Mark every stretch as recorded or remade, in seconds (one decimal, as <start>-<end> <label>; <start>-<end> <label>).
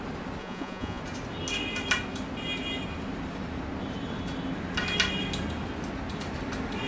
0.0-0.4 recorded; 0.4-1.0 remade; 1.0-6.9 recorded